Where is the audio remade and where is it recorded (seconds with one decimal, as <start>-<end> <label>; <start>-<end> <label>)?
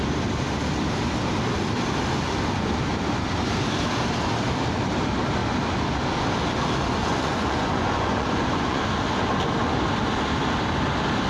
0.0-7.0 recorded; 7.0-8.8 remade; 8.8-11.3 recorded